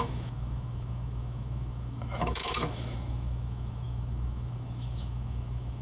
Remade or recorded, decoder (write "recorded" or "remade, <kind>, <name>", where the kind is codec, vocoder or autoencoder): remade, autoencoder, DAC-VAE